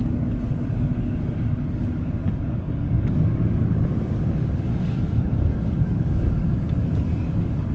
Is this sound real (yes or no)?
no